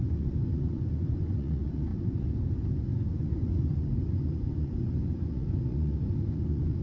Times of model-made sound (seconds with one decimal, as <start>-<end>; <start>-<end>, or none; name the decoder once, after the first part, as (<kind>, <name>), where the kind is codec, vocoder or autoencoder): 0.0-1.9 (vocoder, Vocos); 2.9-6.8